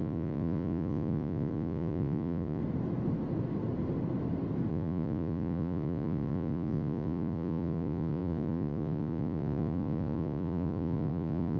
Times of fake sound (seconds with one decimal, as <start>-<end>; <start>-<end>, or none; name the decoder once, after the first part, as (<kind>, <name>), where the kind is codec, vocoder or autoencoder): 0.0-2.6 (vocoder, Vocos); 4.7-11.6